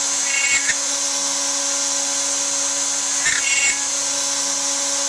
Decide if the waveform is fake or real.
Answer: real